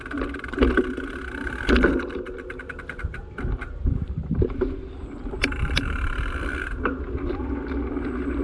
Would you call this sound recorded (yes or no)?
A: yes